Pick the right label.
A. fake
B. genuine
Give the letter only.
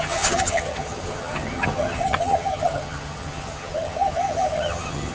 A